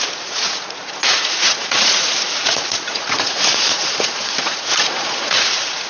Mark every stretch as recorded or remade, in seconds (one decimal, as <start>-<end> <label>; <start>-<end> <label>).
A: 0.0-5.9 remade